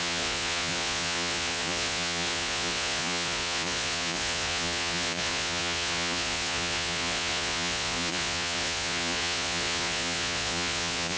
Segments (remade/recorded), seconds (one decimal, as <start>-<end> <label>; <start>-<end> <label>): 0.0-11.2 remade